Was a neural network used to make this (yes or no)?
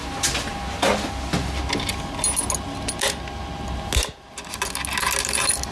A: no